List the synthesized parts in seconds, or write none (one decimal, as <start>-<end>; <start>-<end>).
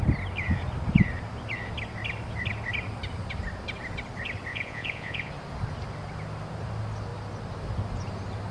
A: 4.5-5.3